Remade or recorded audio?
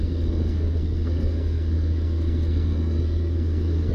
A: remade